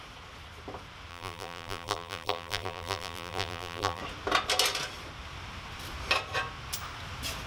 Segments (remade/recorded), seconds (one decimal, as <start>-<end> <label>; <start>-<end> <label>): 0.0-1.1 recorded; 1.1-4.0 remade; 4.0-7.5 recorded